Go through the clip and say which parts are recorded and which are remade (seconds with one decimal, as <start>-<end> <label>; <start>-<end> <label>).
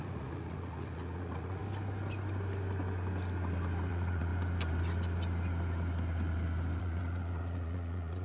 0.0-1.6 remade; 1.6-3.9 recorded; 3.9-4.3 remade; 4.3-6.8 recorded; 6.8-8.2 remade